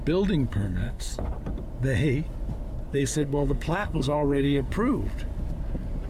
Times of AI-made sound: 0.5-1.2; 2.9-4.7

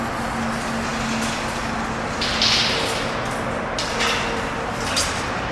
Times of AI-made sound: none

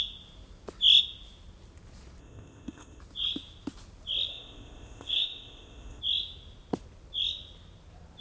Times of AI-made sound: 2.2-3.0; 4.3-6.0

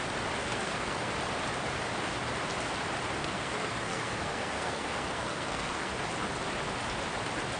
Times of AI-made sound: 0.4-1.1; 3.2-5.9

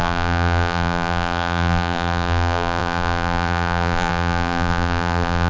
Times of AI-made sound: 0.0-5.5

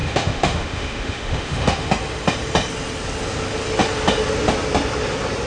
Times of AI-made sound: 0.0-1.9

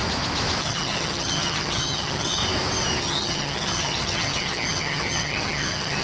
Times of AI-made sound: 0.6-2.4; 3.0-6.0